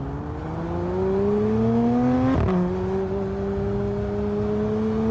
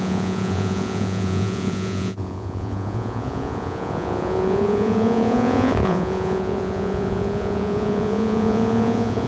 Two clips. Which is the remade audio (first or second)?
second